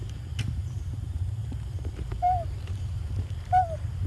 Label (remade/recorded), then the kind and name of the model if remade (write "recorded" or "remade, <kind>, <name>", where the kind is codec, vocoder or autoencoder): remade, vocoder, BigVGAN v2